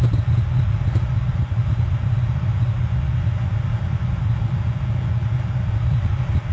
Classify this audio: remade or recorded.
recorded